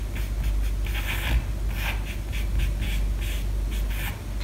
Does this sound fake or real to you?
real